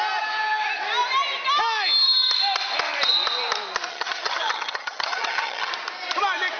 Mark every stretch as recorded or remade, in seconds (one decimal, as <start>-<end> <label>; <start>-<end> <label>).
0.0-3.9 recorded; 3.9-5.7 remade; 5.7-6.6 recorded